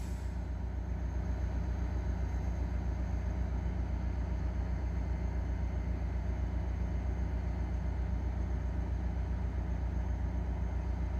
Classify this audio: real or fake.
real